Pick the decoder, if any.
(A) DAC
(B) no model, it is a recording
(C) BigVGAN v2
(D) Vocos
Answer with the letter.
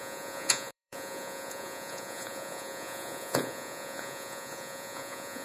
D